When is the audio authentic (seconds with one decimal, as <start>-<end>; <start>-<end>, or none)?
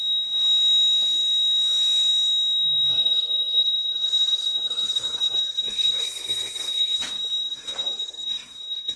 0.0-2.9; 7.0-7.4